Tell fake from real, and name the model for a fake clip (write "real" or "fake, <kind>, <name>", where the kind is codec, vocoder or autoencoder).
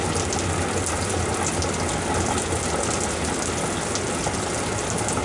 real